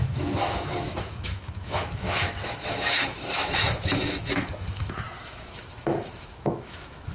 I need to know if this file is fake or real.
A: fake